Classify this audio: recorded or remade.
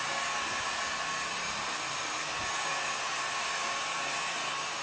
recorded